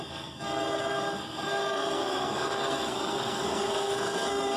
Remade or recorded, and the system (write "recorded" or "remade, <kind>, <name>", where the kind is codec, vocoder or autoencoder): remade, codec, SNAC